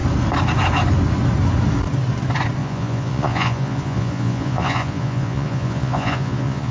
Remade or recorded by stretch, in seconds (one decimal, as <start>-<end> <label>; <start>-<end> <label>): 0.0-2.6 recorded; 2.6-6.7 remade